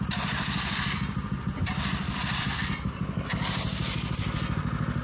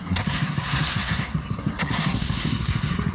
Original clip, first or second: first